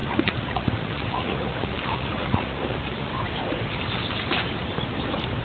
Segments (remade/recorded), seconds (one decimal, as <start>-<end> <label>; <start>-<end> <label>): 0.0-3.1 remade; 3.1-5.4 recorded